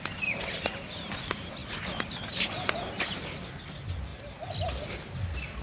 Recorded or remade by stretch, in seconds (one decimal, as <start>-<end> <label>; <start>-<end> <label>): 0.0-5.6 recorded

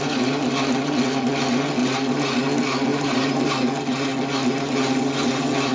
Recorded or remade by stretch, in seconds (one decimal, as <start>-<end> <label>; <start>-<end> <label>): 0.0-1.8 recorded; 1.8-2.4 remade; 2.4-2.9 recorded; 2.9-3.5 remade; 3.5-5.7 recorded

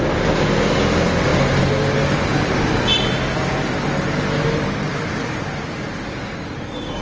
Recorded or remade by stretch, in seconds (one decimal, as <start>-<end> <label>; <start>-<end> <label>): 0.0-7.0 recorded

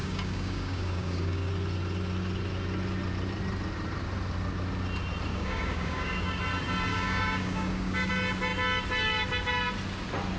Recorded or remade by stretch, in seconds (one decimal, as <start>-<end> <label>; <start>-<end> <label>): 0.0-1.5 remade; 1.5-5.3 recorded; 5.3-6.4 remade; 6.4-6.9 recorded; 6.9-8.1 remade; 8.1-10.4 recorded